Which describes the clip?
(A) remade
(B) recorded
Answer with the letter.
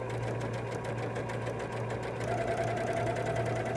B